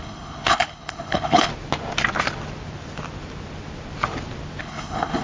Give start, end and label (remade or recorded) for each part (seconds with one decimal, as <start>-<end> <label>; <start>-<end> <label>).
0.0-1.5 remade; 1.5-4.6 recorded; 4.6-5.2 remade